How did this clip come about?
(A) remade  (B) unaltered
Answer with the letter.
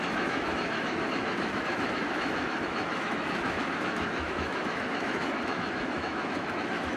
A